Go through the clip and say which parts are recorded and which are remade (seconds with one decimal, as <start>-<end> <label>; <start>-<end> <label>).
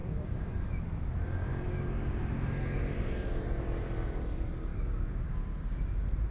0.0-0.7 remade; 0.7-1.5 recorded; 1.5-2.2 remade; 2.2-4.7 recorded; 4.7-5.8 remade; 5.8-6.3 recorded